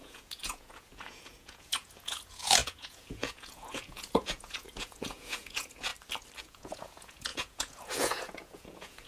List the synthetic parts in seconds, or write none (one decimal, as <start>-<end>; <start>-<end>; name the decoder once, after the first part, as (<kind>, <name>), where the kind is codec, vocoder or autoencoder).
0.0-5.9 (vocoder, Vocos); 6.4-9.1

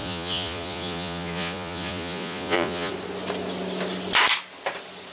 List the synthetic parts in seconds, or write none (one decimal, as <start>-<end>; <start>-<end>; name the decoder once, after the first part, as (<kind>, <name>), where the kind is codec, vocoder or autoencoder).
0.0-2.9 (vocoder, Vocos)

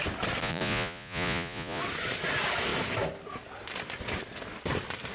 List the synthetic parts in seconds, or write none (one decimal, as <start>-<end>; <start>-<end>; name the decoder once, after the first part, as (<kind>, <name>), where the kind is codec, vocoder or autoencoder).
0.4-1.8 (vocoder, Vocos)